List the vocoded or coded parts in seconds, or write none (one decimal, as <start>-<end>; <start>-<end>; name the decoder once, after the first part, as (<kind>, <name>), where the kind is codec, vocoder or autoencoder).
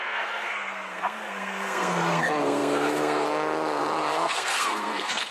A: 0.0-5.3 (codec, SNAC)